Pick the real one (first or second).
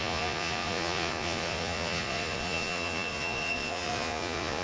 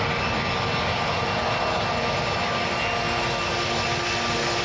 second